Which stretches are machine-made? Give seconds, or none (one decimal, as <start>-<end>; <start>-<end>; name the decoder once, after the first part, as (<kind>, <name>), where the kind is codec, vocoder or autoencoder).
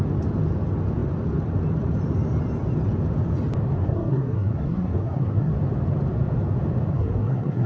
3.8-5.5 (codec, SNAC); 6.9-7.7